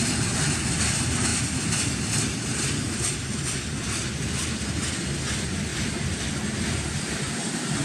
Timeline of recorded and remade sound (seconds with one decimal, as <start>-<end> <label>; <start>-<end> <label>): 0.0-5.7 recorded; 5.7-6.2 remade; 6.2-7.8 recorded